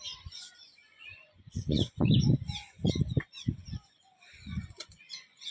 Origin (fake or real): fake